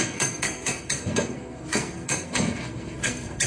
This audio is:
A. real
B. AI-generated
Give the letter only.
B